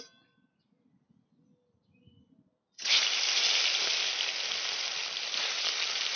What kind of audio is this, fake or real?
real